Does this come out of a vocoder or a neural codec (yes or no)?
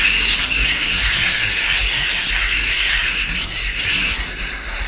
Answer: yes